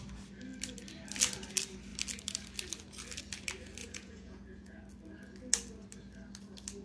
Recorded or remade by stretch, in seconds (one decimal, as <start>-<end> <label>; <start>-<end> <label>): 0.0-3.8 recorded; 3.8-4.8 remade; 4.8-6.8 recorded